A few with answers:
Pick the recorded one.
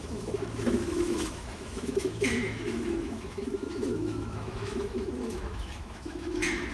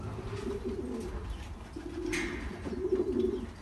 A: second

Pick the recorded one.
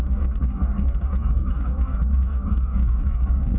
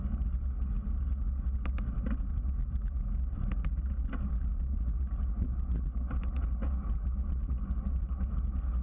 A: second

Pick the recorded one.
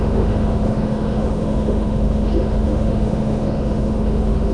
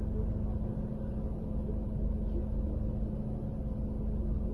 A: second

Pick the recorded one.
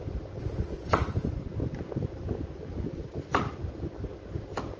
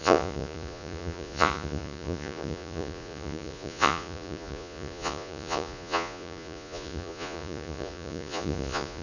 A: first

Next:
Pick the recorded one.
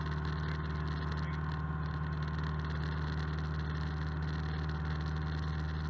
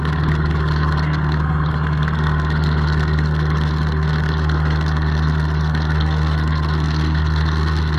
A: first